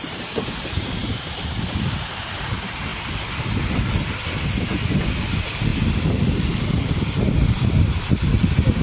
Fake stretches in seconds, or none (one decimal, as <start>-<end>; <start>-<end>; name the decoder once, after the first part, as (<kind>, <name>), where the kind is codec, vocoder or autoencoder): none